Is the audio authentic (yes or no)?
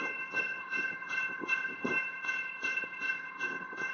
no